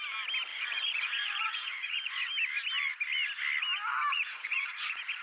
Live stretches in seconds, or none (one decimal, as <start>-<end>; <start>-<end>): 0.0-0.5; 2.3-4.1